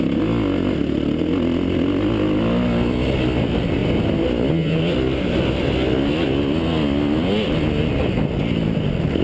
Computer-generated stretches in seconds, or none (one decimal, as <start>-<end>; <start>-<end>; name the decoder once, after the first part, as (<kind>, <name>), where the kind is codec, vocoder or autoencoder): none